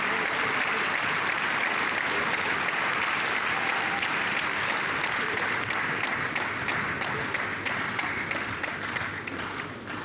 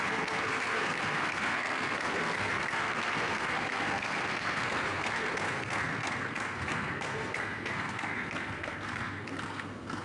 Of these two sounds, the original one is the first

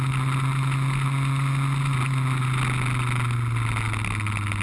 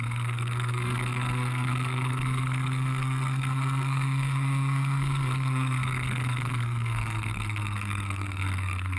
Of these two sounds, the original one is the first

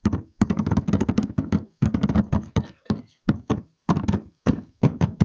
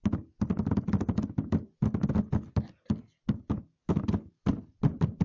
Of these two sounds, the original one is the second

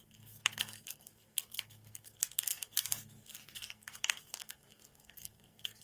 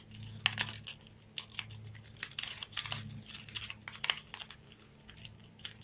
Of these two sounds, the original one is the second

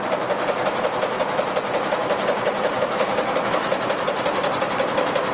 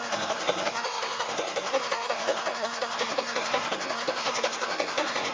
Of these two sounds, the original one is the first